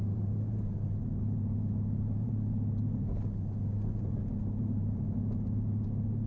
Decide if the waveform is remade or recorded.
remade